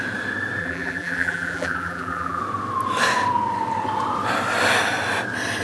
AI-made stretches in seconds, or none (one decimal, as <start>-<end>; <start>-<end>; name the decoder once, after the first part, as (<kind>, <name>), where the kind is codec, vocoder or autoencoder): 0.6-2.4 (vocoder, BigVGAN v2)